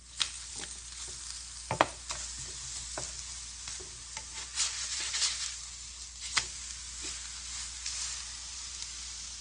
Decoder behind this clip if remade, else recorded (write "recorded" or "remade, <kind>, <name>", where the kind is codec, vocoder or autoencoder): recorded